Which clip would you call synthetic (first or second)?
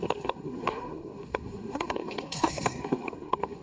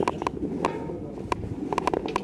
first